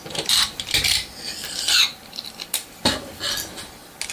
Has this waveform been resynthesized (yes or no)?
no